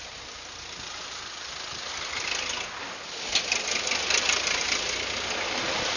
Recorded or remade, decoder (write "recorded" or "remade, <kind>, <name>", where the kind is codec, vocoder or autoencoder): recorded